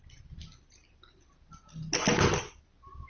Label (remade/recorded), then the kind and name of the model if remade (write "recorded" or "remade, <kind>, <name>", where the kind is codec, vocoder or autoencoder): recorded